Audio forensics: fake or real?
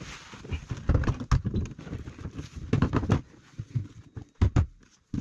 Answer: real